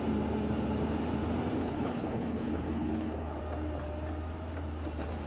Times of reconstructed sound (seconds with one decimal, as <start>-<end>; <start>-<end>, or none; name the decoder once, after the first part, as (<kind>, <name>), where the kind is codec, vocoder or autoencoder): 1.6-3.4 (codec, HILCodec)